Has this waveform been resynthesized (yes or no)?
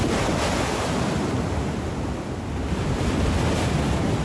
no